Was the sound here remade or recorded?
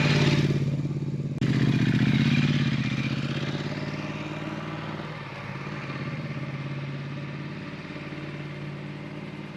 recorded